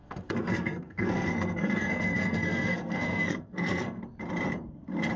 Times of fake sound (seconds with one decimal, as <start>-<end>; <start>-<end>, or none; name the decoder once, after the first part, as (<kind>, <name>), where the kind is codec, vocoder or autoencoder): 0.0-4.0 (codec, SNAC)

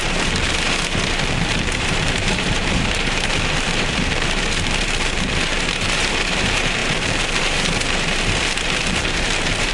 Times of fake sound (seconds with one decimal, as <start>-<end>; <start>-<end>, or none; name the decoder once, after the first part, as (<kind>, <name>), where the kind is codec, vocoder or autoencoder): 0.0-9.7 (vocoder, BigVGAN v2)

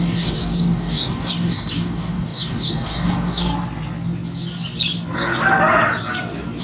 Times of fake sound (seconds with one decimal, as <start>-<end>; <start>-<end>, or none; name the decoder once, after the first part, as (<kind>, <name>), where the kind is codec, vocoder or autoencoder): 0.0-3.5 (codec, DAC)

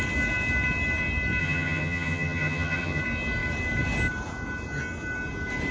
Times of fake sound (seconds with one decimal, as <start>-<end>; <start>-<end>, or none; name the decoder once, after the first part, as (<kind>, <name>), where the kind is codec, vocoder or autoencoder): 1.4-3.0 (vocoder, HiFi-GAN)

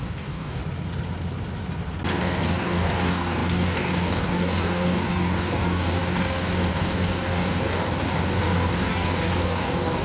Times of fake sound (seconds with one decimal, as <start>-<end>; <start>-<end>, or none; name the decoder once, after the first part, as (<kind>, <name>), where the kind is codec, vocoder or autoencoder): 0.0-0.6 (codec, DAC); 2.2-10.0

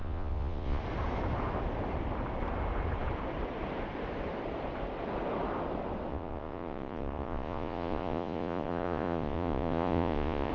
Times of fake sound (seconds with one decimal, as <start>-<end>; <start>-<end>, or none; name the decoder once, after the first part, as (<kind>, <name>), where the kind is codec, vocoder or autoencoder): 0.0-0.8 (vocoder, Vocos); 6.1-10.5

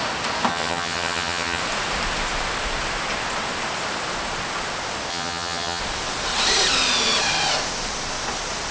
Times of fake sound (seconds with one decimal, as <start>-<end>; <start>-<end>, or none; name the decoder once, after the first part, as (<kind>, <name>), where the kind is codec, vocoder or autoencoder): 0.5-1.6 (vocoder, HiFi-GAN); 5.1-5.8

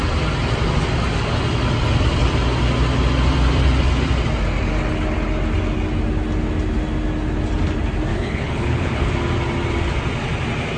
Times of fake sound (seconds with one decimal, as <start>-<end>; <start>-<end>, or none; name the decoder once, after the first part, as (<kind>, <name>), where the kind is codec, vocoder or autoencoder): 8.1-9.1 (codec, HILCodec)